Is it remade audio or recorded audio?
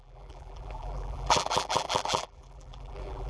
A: remade